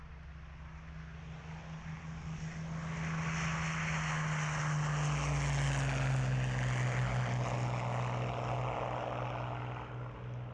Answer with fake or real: real